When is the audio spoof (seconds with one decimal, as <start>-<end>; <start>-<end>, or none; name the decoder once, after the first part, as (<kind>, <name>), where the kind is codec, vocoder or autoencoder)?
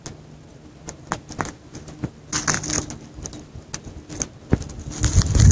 none